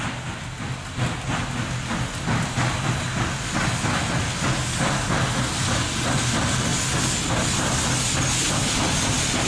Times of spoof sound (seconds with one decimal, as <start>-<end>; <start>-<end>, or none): none